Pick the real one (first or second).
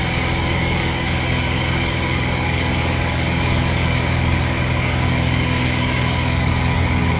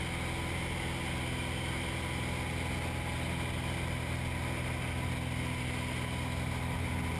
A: second